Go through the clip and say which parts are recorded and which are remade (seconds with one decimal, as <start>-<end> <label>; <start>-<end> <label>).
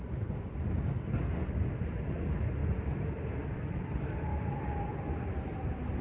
0.0-6.0 recorded